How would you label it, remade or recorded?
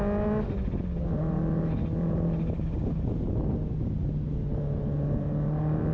recorded